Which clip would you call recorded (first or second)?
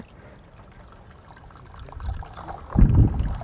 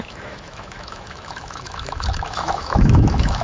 first